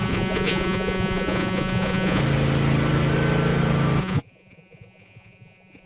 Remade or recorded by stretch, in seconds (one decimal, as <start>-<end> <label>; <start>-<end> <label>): 0.0-2.2 remade; 2.2-4.0 recorded; 4.0-5.9 remade

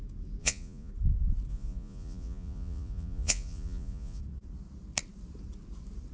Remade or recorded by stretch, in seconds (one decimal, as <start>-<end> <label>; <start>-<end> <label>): 0.0-0.4 recorded; 0.4-0.9 remade; 0.9-1.5 recorded; 1.5-4.2 remade; 4.2-6.1 recorded

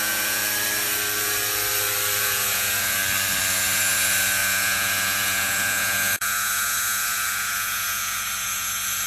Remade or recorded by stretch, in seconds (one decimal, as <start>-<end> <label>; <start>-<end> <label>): 0.0-0.4 remade; 0.4-2.2 recorded; 2.2-3.0 remade; 3.0-3.5 recorded; 3.5-9.1 remade

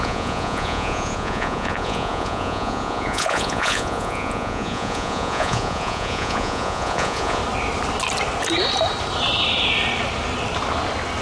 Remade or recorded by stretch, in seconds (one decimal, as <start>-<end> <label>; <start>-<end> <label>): 0.0-7.4 remade; 7.4-11.2 recorded

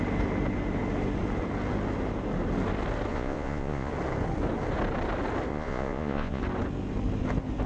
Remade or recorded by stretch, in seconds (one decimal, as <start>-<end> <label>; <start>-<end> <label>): 0.0-3.1 recorded; 3.1-3.9 remade; 3.9-5.5 recorded; 5.5-6.4 remade; 6.4-7.7 recorded